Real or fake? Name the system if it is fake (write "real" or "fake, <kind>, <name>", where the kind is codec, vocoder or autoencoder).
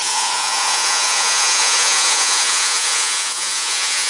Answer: fake, vocoder, Vocos